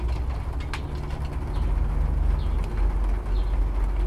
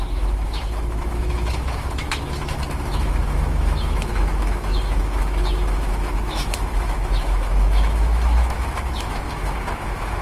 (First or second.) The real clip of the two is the first